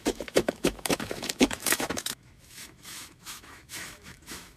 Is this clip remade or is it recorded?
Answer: remade